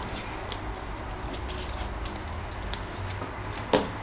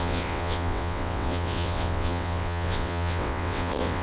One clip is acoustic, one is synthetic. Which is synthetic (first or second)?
second